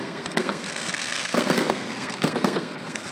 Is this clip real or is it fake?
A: fake